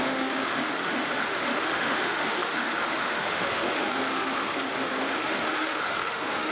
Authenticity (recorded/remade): remade